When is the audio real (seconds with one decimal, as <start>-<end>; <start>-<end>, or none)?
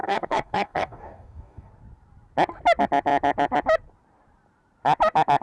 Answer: 1.7-5.4